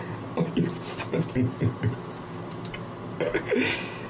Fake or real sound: real